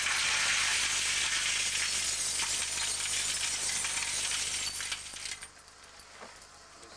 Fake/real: real